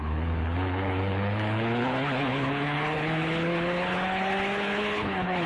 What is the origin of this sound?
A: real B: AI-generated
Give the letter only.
B